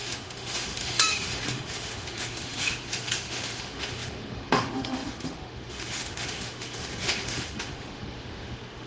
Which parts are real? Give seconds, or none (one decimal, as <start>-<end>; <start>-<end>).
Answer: none